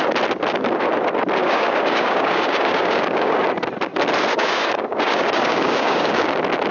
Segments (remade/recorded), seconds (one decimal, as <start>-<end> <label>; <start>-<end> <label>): 0.0-1.4 recorded; 1.4-3.3 remade; 3.3-4.3 recorded; 4.3-6.3 remade; 6.3-6.7 recorded